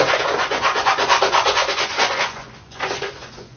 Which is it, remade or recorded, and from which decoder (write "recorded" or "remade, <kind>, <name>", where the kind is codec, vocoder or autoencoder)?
remade, vocoder, Vocos